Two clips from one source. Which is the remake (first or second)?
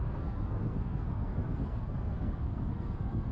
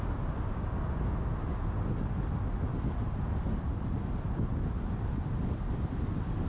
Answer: first